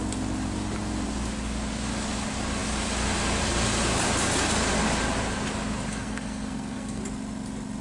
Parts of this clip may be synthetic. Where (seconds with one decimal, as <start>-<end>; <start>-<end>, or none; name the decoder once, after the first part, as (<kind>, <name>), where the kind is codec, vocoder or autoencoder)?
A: 5.9-7.0 (codec, SNAC)